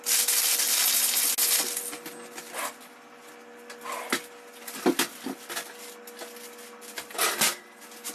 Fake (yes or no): no